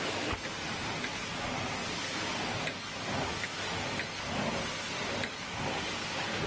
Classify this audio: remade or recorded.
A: recorded